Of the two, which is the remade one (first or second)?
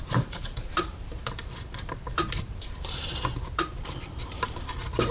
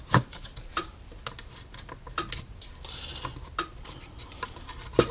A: first